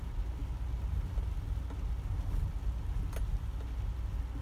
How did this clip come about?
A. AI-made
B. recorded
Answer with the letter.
B